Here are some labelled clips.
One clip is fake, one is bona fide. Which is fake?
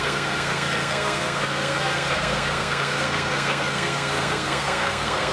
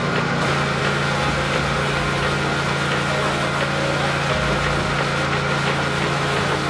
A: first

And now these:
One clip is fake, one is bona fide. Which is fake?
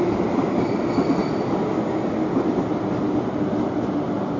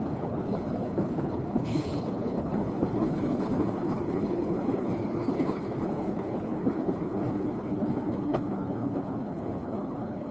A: second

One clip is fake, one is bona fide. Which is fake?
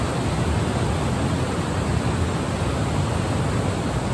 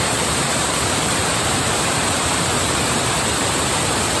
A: second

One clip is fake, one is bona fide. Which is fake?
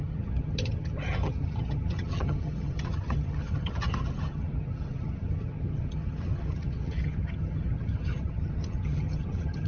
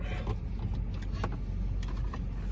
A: first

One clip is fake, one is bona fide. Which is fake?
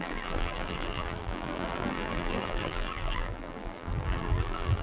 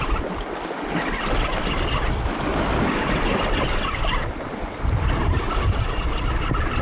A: first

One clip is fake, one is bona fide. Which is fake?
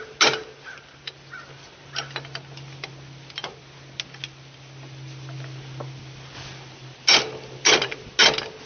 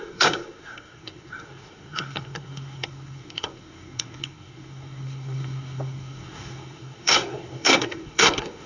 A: second